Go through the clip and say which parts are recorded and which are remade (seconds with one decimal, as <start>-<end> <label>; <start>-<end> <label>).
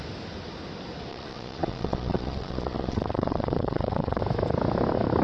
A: 0.0-1.1 recorded; 1.1-4.2 remade; 4.2-5.2 recorded